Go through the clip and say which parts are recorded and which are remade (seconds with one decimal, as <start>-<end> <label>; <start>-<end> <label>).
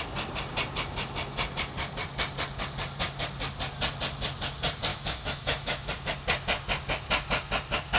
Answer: 0.0-4.9 recorded; 4.9-5.9 remade; 5.9-8.0 recorded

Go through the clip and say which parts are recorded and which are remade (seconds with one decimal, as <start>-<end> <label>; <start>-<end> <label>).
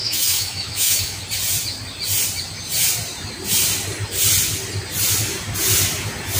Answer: 0.0-1.2 remade; 1.2-6.4 recorded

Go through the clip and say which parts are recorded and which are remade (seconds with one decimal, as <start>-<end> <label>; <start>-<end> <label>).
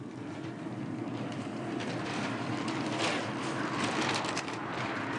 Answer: 0.0-5.2 recorded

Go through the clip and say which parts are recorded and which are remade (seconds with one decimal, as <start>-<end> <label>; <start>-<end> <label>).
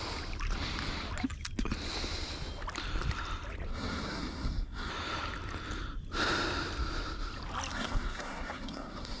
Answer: 0.0-3.7 recorded; 3.7-4.9 remade; 4.9-7.7 recorded; 7.7-9.2 remade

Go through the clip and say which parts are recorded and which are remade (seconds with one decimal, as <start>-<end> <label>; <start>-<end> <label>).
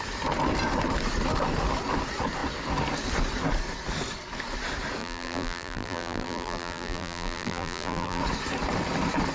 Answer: 0.0-5.0 recorded; 5.0-8.2 remade; 8.2-9.3 recorded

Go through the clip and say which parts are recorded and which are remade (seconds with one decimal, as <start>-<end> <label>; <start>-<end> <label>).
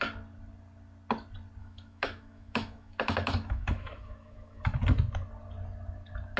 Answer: 0.0-1.6 recorded; 1.6-4.6 remade; 4.6-6.4 recorded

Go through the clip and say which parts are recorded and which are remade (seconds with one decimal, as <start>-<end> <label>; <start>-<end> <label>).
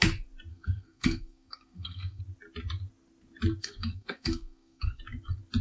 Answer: 0.0-0.5 recorded; 0.5-2.2 remade; 2.2-3.6 recorded; 3.6-5.0 remade; 5.0-5.6 recorded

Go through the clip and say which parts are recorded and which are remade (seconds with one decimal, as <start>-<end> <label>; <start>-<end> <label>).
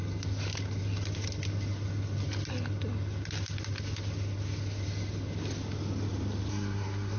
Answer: 0.0-6.5 recorded; 6.5-7.2 remade